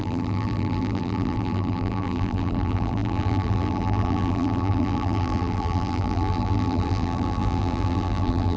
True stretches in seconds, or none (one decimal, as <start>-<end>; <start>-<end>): none